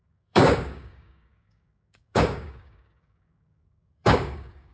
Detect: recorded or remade remade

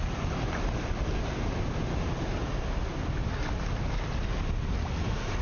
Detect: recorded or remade recorded